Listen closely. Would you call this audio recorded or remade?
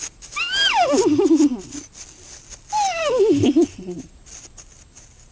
recorded